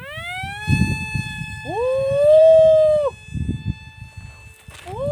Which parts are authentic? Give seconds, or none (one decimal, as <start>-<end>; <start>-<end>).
0.0-1.4; 2.4-5.1